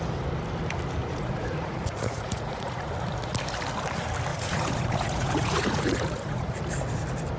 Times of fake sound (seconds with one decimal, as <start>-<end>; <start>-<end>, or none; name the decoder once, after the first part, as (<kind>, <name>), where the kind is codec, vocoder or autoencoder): 1.0-2.9 (vocoder, Vocos); 4.3-6.6